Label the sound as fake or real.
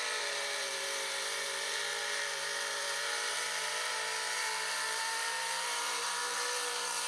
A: fake